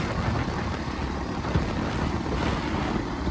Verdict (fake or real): real